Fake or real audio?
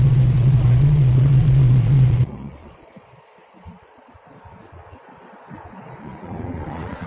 fake